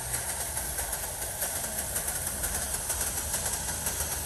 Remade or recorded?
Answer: recorded